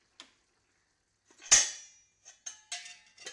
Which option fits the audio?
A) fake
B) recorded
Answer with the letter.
B